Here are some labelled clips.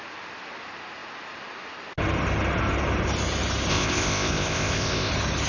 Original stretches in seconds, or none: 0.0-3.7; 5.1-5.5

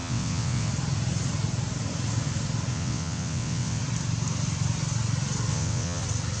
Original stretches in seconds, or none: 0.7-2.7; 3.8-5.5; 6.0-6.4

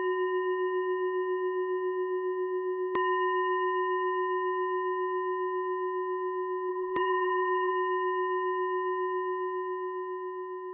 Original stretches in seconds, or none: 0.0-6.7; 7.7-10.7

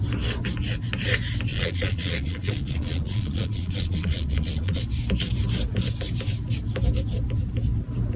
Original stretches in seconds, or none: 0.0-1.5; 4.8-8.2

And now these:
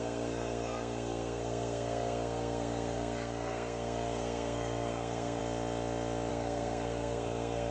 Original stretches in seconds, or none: 5.4-6.3